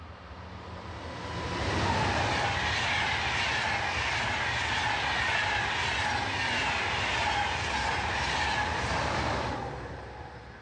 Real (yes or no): yes